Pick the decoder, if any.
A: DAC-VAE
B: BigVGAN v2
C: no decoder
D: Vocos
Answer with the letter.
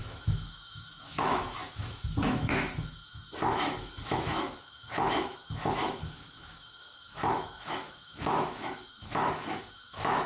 A